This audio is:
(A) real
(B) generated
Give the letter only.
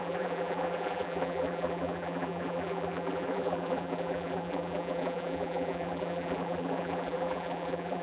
B